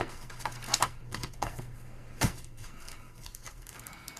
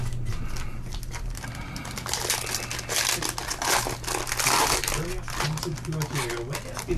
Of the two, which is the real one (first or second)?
second